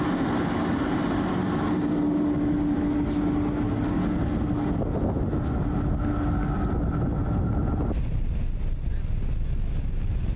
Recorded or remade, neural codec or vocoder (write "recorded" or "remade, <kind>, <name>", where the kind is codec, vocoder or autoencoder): recorded